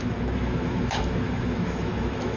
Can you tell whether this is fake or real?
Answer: fake